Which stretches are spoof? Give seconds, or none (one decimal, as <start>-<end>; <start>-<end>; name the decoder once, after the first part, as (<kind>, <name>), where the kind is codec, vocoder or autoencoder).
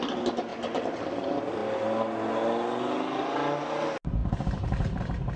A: 0.5-1.0 (vocoder, BigVGAN v2); 4.2-5.4